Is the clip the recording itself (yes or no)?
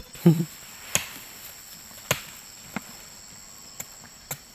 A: yes